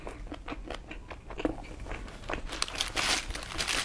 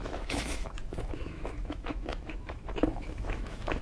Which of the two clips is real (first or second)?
first